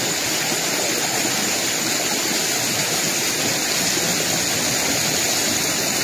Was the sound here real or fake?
real